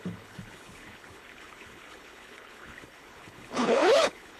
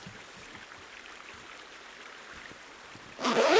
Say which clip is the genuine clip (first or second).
second